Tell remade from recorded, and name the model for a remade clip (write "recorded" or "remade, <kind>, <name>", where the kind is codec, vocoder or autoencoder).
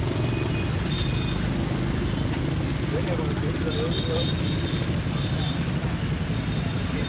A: recorded